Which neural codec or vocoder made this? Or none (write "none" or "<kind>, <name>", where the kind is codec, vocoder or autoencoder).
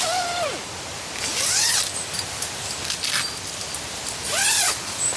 none